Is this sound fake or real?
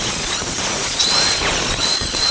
fake